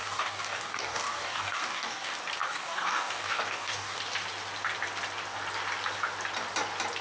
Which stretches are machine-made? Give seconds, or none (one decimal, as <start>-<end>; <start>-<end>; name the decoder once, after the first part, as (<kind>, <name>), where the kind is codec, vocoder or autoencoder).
0.0-2.1 (codec, DAC); 2.5-4.0